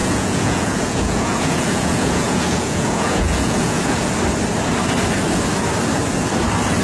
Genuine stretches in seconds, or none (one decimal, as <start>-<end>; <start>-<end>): 4.1-6.8